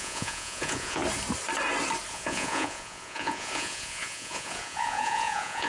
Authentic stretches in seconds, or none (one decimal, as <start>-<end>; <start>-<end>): 1.0-2.1